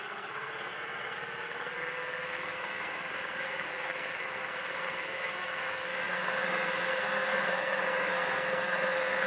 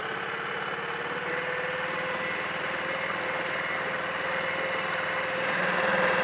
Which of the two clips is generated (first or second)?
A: first